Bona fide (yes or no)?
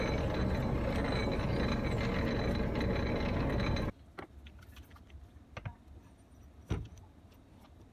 yes